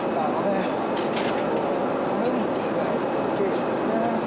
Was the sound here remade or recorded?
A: recorded